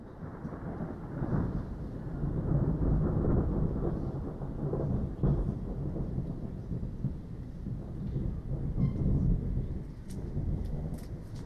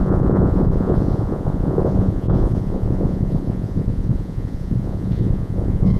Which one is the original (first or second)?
first